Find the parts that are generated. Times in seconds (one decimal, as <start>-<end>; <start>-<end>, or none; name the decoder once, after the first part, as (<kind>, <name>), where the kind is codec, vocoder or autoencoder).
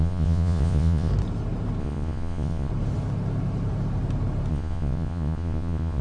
0.0-1.1 (vocoder, Vocos); 1.8-2.7; 4.5-6.0